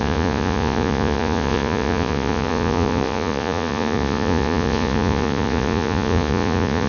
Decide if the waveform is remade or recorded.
remade